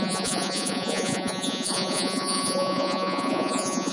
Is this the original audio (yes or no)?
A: no